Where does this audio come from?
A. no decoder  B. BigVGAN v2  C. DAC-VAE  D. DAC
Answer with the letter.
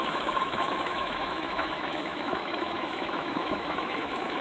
C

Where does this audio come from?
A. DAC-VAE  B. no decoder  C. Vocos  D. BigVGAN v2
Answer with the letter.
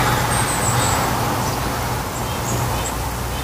B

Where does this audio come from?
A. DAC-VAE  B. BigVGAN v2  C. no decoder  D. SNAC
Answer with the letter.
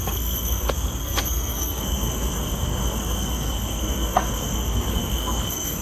D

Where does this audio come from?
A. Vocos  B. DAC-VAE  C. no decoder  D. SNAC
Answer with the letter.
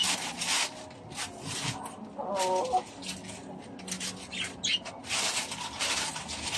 C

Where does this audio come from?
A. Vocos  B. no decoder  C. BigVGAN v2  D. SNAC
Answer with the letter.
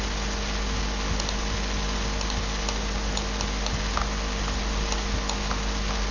B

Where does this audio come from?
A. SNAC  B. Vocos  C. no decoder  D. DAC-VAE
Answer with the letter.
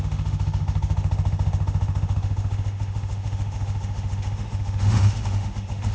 D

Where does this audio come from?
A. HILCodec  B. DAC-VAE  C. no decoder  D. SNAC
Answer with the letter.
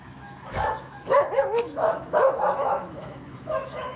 B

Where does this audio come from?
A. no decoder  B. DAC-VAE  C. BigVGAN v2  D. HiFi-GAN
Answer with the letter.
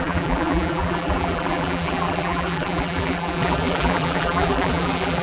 C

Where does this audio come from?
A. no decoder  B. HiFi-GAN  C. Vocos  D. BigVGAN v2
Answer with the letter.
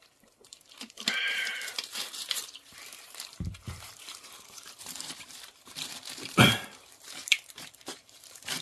D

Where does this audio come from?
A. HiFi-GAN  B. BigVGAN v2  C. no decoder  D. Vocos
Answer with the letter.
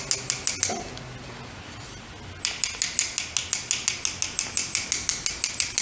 C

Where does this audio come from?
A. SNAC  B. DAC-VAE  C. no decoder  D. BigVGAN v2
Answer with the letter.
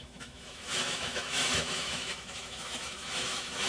B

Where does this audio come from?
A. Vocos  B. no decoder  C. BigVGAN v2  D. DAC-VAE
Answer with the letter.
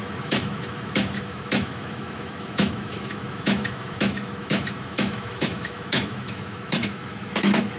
D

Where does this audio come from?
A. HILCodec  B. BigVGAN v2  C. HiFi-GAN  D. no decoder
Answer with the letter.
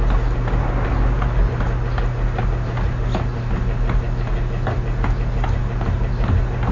D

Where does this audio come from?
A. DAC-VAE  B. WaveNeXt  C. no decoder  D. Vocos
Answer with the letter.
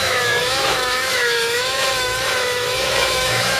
A